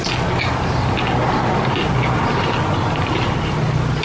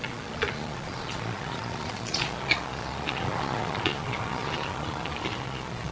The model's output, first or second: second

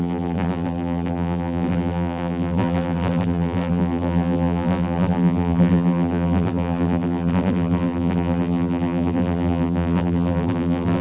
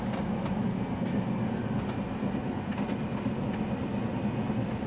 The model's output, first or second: first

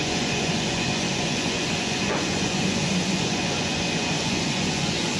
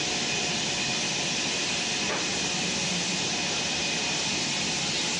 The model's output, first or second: first